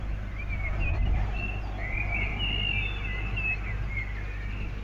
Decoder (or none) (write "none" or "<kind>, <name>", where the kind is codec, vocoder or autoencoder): none